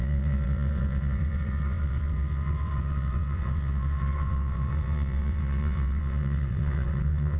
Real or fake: fake